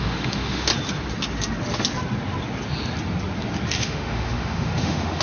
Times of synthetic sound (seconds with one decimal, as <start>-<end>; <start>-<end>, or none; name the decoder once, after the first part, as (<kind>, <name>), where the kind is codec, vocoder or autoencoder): 0.0-0.7 (autoencoder, DAC-VAE); 3.8-5.2